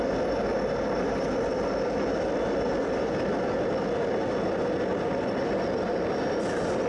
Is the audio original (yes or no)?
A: yes